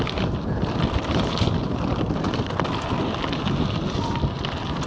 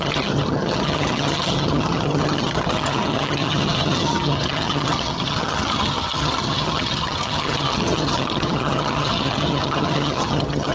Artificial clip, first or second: second